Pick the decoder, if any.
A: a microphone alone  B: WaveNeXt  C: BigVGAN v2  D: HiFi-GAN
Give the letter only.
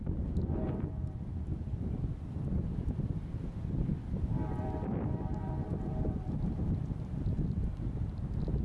C